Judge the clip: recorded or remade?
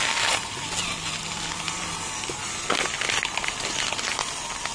recorded